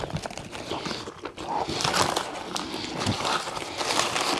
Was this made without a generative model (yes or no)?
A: yes